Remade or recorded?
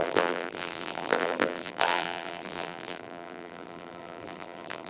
remade